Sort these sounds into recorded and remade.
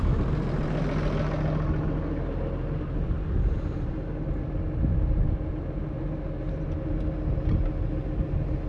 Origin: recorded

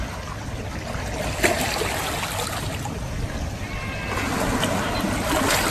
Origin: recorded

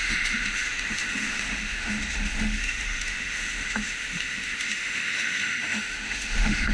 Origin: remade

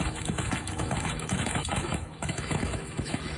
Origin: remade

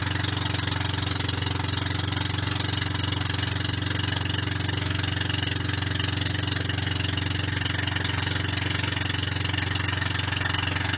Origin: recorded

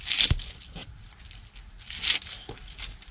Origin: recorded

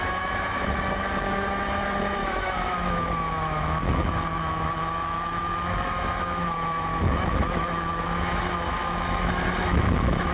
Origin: remade